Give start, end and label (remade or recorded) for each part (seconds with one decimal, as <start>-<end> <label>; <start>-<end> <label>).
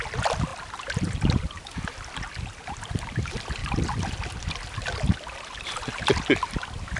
0.0-7.0 recorded